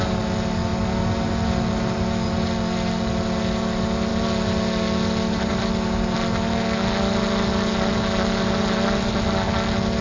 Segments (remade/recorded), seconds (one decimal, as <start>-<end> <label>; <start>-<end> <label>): 0.0-10.0 recorded